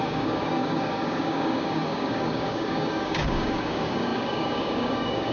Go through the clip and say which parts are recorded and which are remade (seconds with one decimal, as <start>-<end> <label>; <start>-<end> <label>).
0.0-5.3 remade

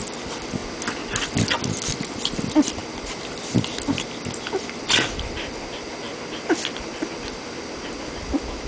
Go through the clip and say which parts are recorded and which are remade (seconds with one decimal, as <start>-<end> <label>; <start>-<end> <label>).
0.0-8.7 recorded